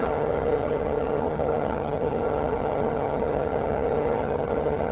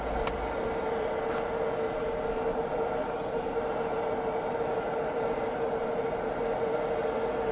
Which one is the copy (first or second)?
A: first